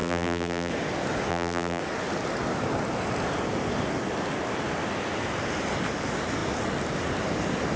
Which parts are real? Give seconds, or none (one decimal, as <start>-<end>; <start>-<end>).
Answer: 0.7-1.3; 1.8-7.8